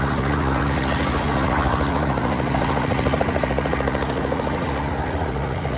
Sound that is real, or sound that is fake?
fake